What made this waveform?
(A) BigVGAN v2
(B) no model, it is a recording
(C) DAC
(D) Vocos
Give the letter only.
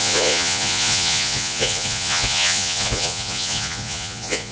D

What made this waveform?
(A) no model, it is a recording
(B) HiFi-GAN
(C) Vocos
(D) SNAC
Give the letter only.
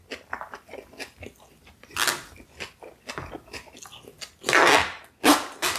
A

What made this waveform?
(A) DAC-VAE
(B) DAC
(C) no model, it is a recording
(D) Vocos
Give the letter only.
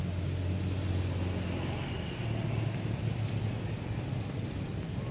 C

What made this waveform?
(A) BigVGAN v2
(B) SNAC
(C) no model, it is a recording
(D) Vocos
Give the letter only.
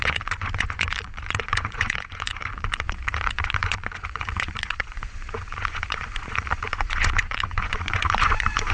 D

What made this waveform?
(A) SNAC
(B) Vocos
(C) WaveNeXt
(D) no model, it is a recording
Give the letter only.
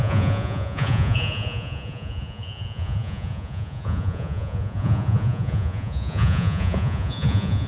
B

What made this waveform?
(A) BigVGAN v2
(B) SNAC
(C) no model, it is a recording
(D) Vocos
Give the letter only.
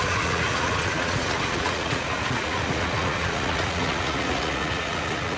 D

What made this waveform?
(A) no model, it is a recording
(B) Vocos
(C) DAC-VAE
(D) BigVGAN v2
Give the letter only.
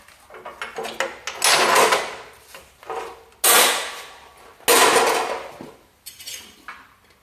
A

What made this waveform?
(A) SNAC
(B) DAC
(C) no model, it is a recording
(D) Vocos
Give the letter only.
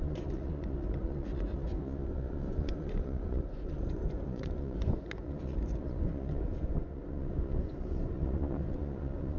D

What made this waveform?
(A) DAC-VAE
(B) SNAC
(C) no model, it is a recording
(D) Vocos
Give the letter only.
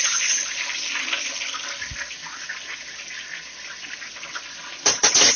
C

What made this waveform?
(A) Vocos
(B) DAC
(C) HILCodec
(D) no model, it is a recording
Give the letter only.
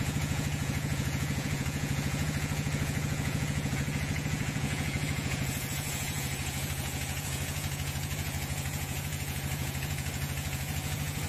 A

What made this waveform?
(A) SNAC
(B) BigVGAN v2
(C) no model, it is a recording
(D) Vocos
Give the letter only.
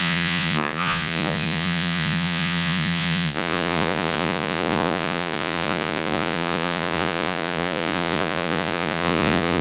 D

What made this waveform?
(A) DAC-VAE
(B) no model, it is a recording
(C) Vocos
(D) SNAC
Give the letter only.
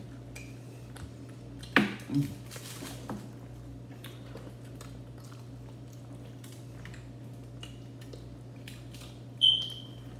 B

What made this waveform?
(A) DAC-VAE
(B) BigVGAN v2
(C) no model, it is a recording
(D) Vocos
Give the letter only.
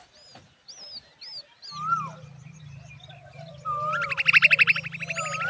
C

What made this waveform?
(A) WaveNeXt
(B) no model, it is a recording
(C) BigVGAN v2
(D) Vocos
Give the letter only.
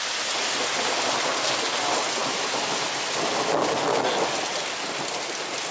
B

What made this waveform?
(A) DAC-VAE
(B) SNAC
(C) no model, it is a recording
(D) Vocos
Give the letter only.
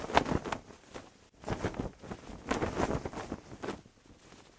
C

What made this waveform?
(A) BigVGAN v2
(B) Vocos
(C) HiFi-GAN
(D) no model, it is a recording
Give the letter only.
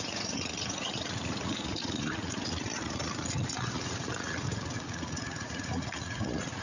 B